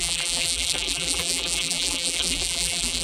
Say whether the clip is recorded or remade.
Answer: remade